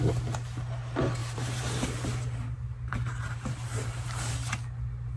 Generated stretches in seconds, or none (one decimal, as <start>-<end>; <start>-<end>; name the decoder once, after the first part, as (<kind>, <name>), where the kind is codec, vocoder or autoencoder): 1.2-4.3 (vocoder, BigVGAN v2)